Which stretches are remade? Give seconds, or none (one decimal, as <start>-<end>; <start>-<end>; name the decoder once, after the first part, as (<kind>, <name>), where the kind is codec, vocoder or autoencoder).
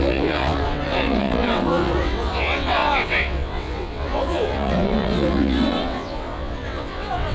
0.0-7.3 (vocoder, WaveNeXt)